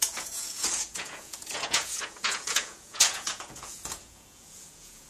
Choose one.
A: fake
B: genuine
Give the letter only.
A